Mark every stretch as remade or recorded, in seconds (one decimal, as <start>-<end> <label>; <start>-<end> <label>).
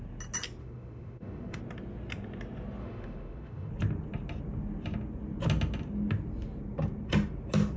0.0-0.6 recorded; 0.6-1.6 remade; 1.6-2.8 recorded; 2.8-3.7 remade; 3.7-7.8 recorded